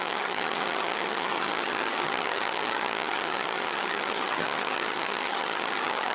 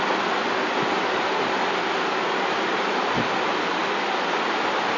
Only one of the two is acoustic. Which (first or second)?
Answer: second